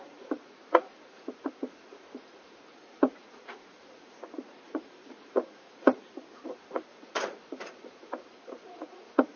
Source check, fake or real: fake